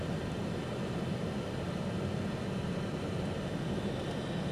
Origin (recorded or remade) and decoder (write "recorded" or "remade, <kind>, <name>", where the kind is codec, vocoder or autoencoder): recorded